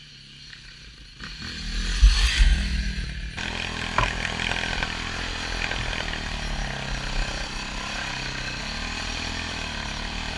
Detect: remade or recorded recorded